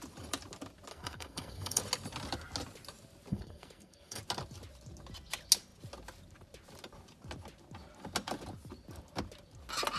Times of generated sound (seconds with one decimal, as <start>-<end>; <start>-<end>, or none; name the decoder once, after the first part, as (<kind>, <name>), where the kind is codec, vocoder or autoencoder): 0.9-1.8 (codec, SNAC); 3.3-4.2